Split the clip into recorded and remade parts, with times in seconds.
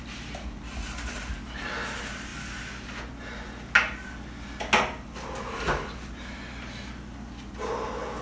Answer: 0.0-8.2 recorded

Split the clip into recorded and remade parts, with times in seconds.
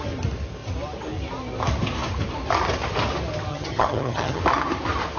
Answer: 0.0-3.5 recorded; 3.5-4.4 remade; 4.4-5.2 recorded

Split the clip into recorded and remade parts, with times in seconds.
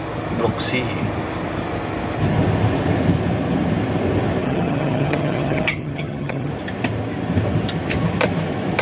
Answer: 0.0-4.4 recorded; 4.4-6.5 remade; 6.5-8.8 recorded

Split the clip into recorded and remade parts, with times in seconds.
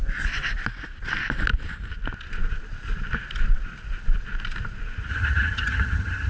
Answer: 0.0-5.1 recorded; 5.1-6.3 remade